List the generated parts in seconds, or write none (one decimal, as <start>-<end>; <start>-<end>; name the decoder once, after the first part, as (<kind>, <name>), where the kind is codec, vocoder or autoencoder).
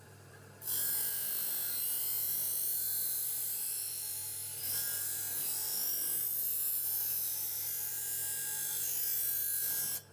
0.0-4.6 (vocoder, BigVGAN v2); 7.4-7.9; 8.8-9.4